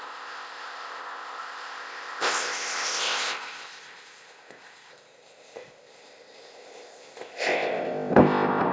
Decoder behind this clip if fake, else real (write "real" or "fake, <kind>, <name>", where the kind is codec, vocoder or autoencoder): fake, codec, ZipCodec